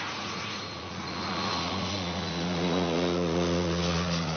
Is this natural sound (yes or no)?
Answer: no